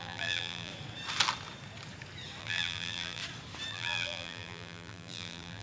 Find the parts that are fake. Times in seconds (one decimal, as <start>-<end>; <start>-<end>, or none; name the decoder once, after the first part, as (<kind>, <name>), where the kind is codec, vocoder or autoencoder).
0.0-0.7 (vocoder, BigVGAN v2); 2.4-3.2; 3.7-5.6